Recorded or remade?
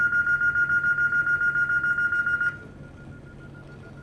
recorded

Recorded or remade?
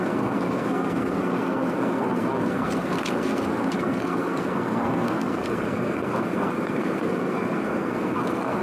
remade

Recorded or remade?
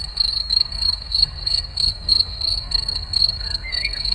remade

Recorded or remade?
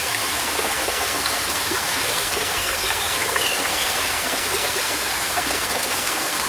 remade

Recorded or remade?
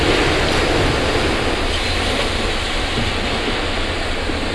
recorded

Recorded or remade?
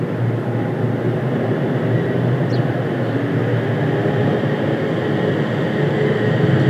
recorded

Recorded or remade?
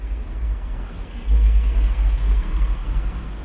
remade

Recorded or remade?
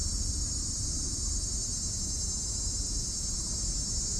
recorded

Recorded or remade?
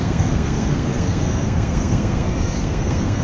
remade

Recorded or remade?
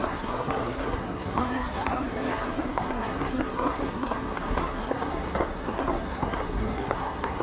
remade